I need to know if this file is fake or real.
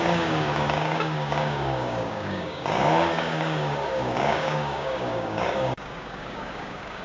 fake